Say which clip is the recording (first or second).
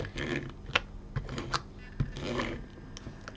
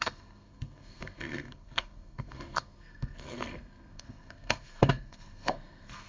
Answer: first